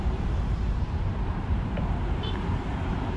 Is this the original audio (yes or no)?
no